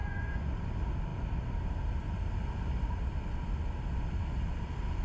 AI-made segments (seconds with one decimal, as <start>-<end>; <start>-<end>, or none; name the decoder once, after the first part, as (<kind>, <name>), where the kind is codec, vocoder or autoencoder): 0.0-0.5 (vocoder, Vocos)